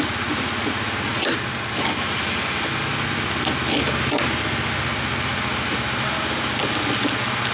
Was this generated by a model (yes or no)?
no